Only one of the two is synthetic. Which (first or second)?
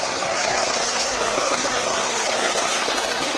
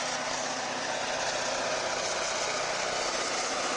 first